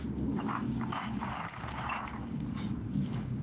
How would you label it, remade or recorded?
remade